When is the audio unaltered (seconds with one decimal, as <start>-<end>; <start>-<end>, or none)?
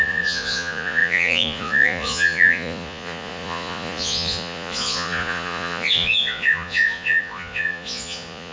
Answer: none